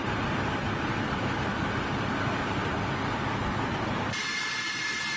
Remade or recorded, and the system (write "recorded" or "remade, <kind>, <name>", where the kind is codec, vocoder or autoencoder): recorded